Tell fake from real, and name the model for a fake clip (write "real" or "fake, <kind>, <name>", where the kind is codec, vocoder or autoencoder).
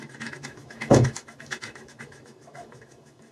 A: fake, autoencoder, DAC-VAE